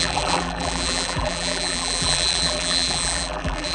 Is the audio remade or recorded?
remade